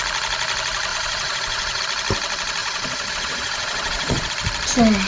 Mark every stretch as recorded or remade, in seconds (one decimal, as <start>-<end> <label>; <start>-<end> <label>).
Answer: 0.0-0.9 recorded; 0.9-1.8 remade; 1.8-2.6 recorded; 2.6-4.3 remade; 4.3-5.1 recorded